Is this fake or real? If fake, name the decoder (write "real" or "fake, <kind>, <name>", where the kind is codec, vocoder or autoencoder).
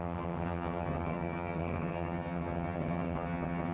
fake, vocoder, HiFi-GAN